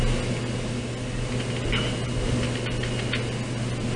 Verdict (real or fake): real